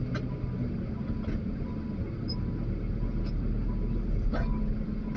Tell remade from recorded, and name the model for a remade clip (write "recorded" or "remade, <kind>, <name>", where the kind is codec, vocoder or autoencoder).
recorded